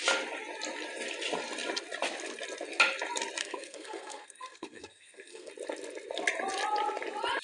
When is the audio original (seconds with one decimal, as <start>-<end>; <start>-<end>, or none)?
0.0-3.4; 5.5-7.4